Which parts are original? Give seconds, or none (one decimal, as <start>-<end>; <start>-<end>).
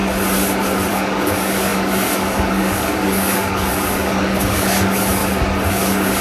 0.0-0.9; 5.2-5.7